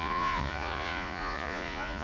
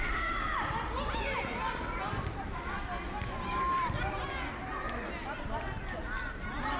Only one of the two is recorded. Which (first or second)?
second